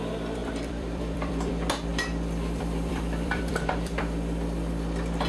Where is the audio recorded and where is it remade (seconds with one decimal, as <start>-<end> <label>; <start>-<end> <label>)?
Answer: 0.0-0.4 recorded; 0.4-1.5 remade; 1.5-1.9 recorded; 1.9-4.0 remade; 4.0-5.3 recorded